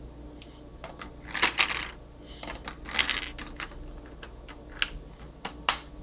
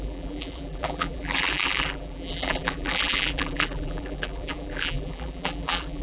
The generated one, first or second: second